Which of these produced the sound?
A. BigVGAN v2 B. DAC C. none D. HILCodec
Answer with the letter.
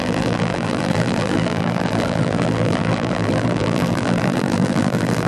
A